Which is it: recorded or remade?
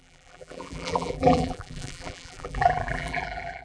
remade